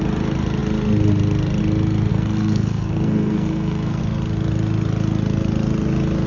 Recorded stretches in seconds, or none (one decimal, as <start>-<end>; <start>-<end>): 0.0-2.1; 4.0-6.3